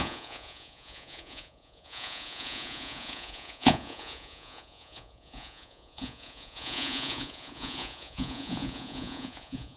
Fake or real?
fake